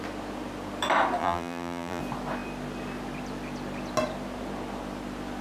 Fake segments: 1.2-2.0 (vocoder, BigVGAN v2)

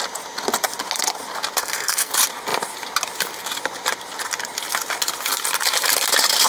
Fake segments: 1.6-2.1 (codec, SNAC)

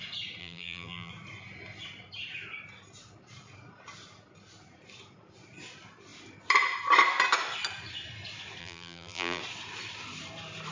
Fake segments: 0.4-1.1 (vocoder, BigVGAN v2); 8.6-9.4

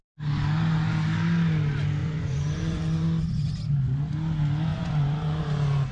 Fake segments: 2.0-3.3 (vocoder, Vocos); 4.7-5.4